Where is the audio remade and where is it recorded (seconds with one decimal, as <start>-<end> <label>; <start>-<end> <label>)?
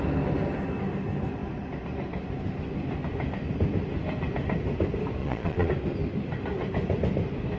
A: 0.0-5.2 recorded; 5.2-5.7 remade; 5.7-7.6 recorded